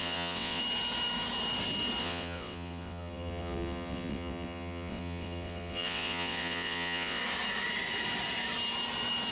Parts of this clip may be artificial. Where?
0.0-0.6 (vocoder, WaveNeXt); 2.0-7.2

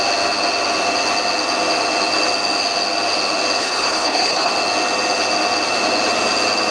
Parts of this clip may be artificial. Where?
3.6-4.5 (codec, HILCodec)

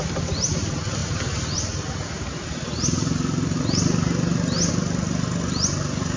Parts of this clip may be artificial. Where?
none

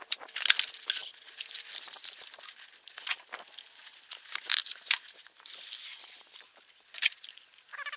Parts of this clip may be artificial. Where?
none

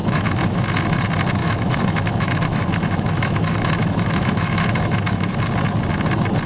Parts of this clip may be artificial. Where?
0.0-0.6 (autoencoder, DAC-VAE); 1.4-5.3

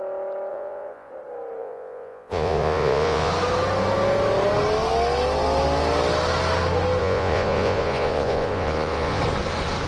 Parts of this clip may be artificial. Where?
0.5-1.1 (vocoder, Vocos); 1.6-3.3; 7.0-9.2

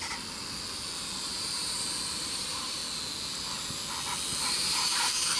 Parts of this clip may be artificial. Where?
1.2-2.8 (vocoder, BigVGAN v2); 4.4-5.4

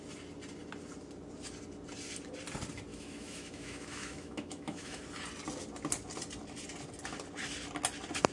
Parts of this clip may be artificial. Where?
2.9-5.0 (autoencoder, DAC-VAE)